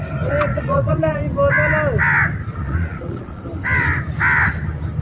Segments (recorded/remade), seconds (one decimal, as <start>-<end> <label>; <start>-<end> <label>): 0.0-0.5 recorded; 0.5-1.2 remade; 1.2-2.5 recorded; 2.5-3.4 remade; 3.4-5.0 recorded